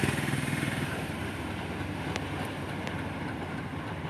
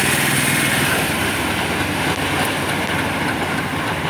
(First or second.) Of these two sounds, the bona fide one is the second